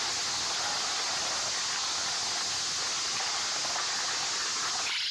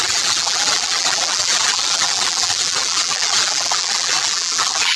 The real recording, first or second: first